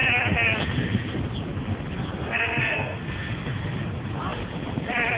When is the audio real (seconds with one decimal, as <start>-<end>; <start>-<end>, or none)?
0.0-2.2; 3.4-5.2